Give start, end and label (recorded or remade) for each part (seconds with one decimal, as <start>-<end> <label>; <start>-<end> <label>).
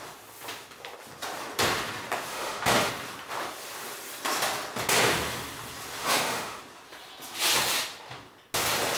0.0-2.3 recorded; 2.3-2.9 remade; 2.9-6.0 recorded; 6.0-6.6 remade; 6.6-9.0 recorded